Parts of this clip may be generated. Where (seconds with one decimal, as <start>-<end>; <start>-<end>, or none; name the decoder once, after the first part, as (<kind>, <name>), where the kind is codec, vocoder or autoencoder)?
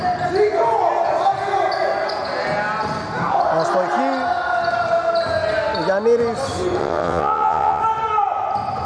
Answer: 6.8-7.8 (vocoder, WaveNeXt)